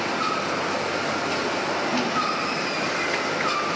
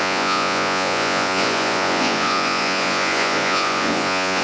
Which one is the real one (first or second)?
first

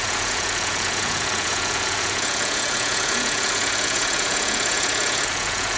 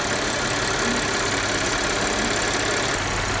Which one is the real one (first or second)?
second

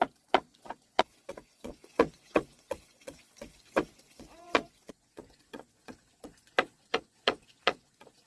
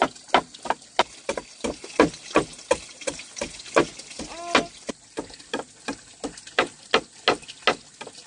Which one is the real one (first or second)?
second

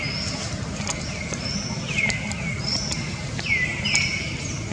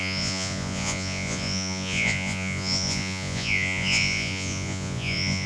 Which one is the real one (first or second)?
first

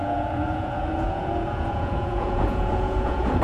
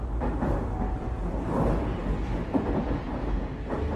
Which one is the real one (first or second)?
second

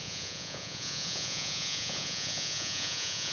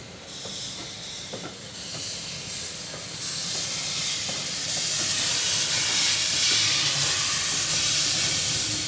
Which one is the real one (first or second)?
second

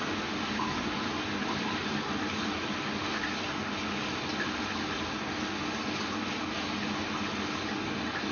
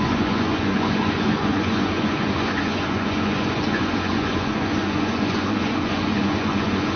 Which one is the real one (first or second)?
first